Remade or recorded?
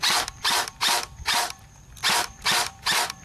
remade